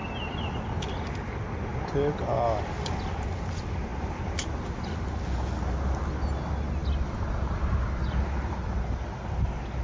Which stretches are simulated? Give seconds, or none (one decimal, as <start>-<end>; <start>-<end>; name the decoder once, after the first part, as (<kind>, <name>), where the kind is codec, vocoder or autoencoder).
0.0-0.9 (vocoder, BigVGAN v2); 1.7-2.3; 3.9-4.6